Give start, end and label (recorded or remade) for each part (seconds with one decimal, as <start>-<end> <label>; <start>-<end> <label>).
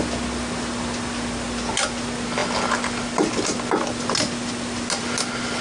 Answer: 0.0-5.6 recorded